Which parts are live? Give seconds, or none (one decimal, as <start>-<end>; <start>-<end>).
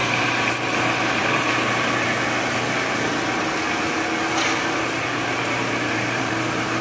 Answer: 1.2-5.3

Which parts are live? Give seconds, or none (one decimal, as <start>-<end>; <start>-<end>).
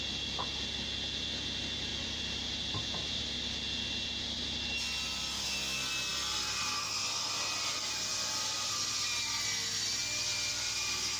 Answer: 0.0-1.9; 3.2-11.2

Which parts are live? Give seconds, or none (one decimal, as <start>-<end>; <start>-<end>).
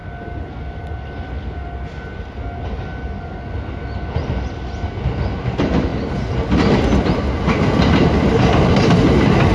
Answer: 0.0-9.5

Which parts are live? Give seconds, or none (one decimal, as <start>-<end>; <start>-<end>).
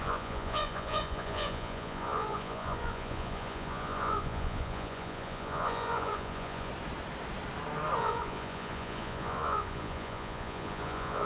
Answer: 6.7-8.0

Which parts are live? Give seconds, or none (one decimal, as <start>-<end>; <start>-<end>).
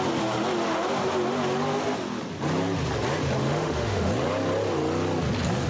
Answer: 0.0-3.4; 4.1-5.7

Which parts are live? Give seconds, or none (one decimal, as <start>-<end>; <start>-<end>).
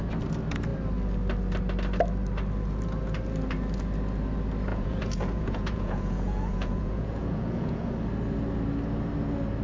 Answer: 0.0-4.7; 7.9-9.6